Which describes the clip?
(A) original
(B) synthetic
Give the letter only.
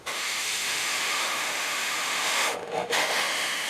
B